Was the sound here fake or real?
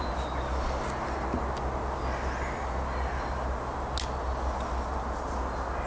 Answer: real